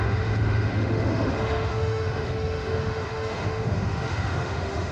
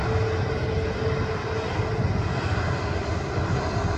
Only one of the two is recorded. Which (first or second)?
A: second